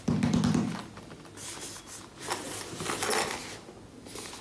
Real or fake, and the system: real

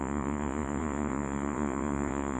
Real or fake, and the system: fake, vocoder, Vocos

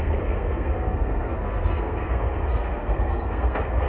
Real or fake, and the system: fake, codec, SNAC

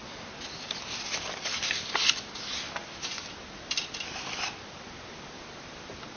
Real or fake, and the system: real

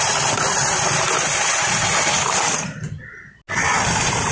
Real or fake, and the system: real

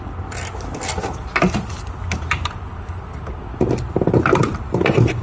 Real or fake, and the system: real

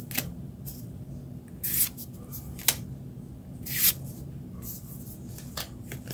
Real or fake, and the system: real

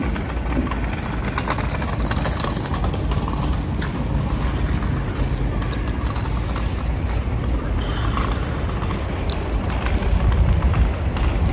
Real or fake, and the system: real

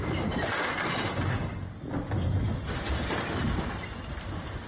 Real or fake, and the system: real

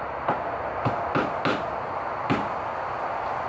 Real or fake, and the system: real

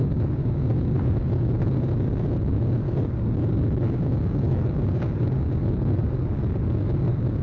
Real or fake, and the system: fake, codec, DAC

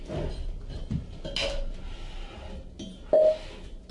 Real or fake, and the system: real